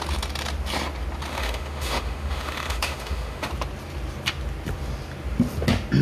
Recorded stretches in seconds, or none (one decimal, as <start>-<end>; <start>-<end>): 0.0-1.3; 3.5-6.0